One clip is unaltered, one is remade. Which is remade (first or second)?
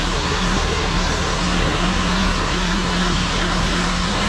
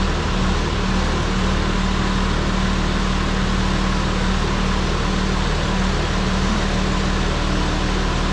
first